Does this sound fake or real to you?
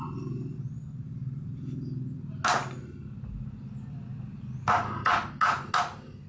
real